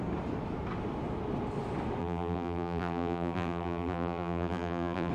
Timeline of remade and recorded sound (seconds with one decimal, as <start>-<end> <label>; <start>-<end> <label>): 0.0-2.0 recorded; 2.0-5.1 remade